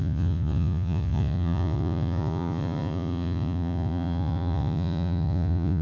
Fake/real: fake